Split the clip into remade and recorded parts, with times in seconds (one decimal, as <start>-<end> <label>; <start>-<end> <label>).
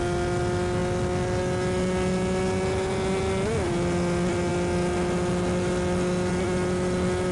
0.0-7.3 recorded